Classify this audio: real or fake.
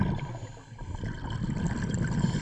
real